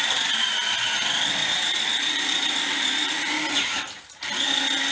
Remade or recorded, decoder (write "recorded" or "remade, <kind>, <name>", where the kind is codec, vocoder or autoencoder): remade, vocoder, BigVGAN v2